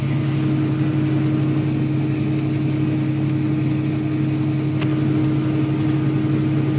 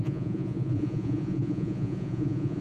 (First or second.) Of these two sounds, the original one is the first